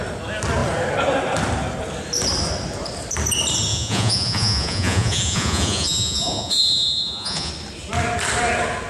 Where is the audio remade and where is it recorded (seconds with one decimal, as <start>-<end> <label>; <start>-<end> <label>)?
0.0-3.7 recorded; 3.7-7.5 remade; 7.5-8.9 recorded